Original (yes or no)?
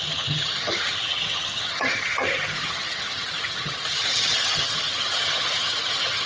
no